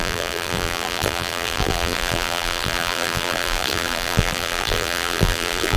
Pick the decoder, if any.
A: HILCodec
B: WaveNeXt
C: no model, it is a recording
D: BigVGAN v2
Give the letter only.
D